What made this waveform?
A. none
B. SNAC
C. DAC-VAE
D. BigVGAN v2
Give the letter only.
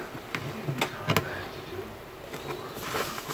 A